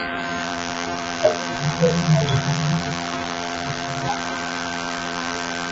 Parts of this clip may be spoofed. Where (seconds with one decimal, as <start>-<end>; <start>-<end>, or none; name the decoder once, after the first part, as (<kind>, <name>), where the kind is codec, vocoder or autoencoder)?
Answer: 0.0-5.7 (vocoder, BigVGAN v2)